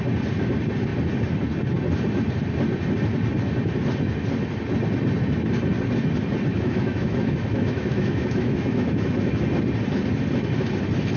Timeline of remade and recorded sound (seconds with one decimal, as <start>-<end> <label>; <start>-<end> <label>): 0.0-6.5 recorded; 6.5-9.3 remade; 9.3-11.2 recorded